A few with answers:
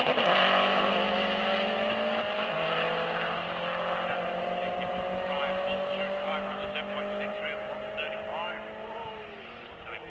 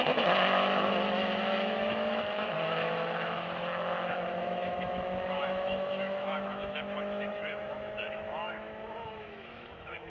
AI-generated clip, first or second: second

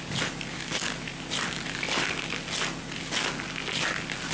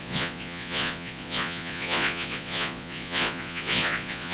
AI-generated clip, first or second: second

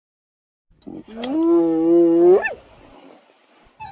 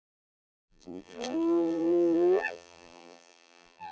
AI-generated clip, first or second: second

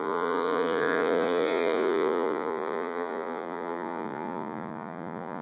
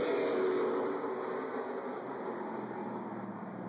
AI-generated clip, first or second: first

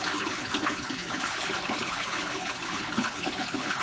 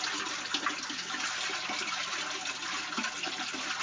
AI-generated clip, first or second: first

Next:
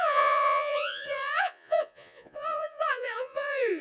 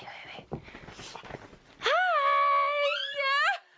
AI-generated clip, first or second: first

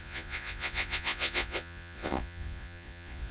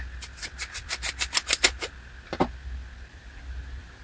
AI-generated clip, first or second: first